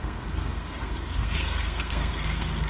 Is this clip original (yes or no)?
no